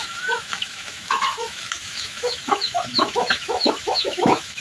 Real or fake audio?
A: fake